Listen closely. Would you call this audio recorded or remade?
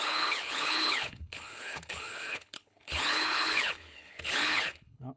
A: remade